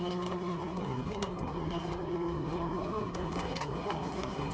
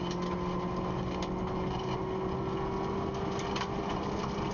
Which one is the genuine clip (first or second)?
second